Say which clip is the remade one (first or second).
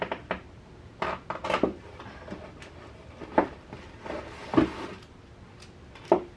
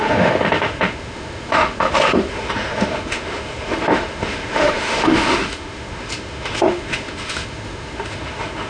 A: second